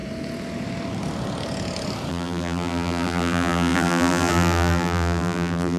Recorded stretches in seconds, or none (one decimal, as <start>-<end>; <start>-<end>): 0.0-2.1